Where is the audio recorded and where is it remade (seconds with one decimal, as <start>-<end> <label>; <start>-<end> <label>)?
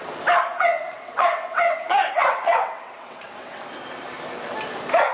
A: 0.0-0.5 recorded; 0.5-3.6 remade; 3.6-5.1 recorded